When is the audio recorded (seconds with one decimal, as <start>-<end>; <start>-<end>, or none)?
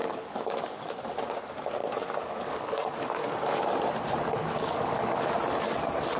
1.1-1.8; 3.3-4.4; 5.3-6.2